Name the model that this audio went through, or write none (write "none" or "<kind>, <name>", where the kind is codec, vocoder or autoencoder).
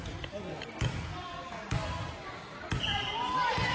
none